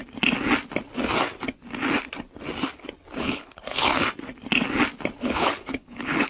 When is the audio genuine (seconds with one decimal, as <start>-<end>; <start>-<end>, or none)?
0.0-3.2; 3.9-5.2